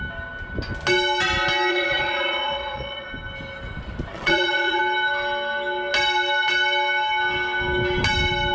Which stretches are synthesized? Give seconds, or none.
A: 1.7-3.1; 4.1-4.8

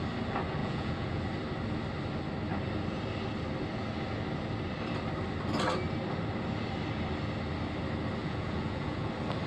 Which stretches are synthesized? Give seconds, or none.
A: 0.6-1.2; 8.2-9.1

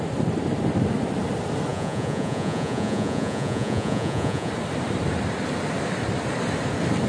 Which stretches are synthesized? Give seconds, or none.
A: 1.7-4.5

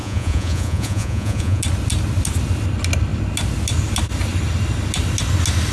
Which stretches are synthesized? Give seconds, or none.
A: 0.0-1.6